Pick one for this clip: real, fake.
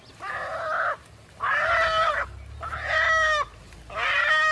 real